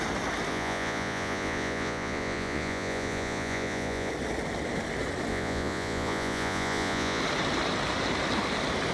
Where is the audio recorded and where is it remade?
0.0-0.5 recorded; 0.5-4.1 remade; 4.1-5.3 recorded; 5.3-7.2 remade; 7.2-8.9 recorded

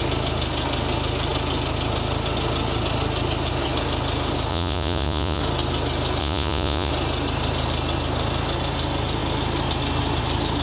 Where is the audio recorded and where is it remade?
0.0-4.5 recorded; 4.5-5.4 remade; 5.4-6.2 recorded; 6.2-6.9 remade; 6.9-10.6 recorded

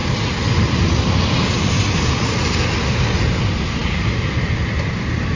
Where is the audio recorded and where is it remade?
0.0-5.4 recorded

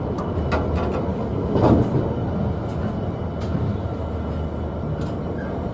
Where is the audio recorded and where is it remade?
0.0-1.1 recorded; 1.1-2.0 remade; 2.0-5.7 recorded